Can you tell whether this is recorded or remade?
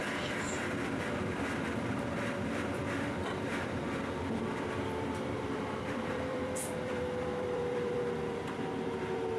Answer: remade